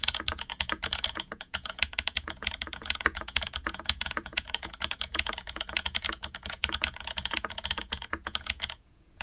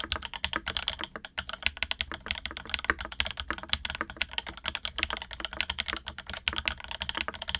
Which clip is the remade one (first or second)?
first